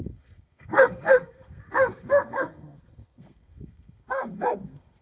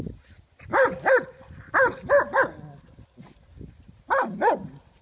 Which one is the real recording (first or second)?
second